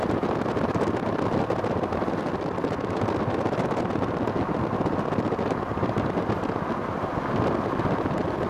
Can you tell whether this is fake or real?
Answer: real